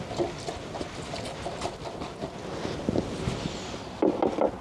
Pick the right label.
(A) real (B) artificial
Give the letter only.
A